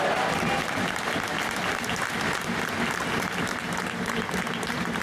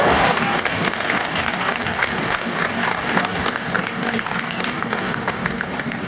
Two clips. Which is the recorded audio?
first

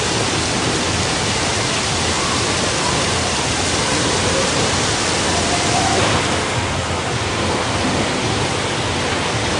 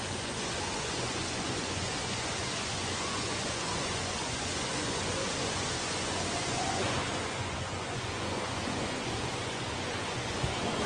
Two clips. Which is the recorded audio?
first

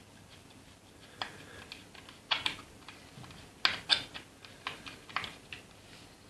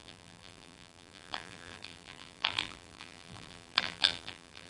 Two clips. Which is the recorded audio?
first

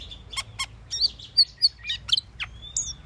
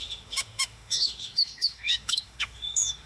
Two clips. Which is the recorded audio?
first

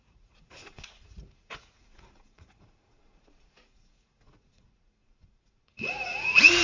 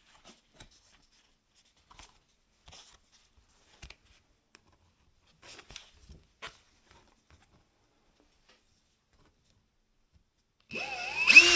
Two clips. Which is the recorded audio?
second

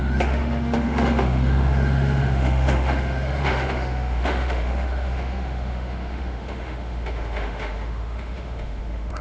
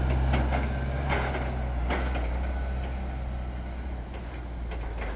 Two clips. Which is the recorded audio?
second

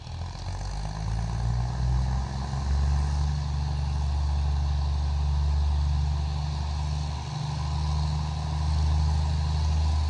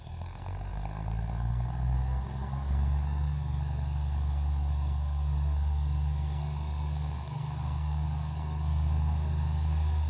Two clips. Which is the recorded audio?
first